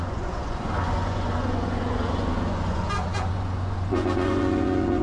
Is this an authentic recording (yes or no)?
no